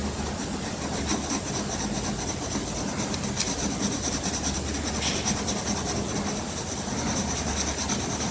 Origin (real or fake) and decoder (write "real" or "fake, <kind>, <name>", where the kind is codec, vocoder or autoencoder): real